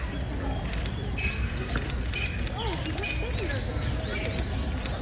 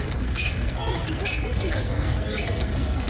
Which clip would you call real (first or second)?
first